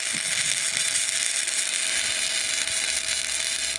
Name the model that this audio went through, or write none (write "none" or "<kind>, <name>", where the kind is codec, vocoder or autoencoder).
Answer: none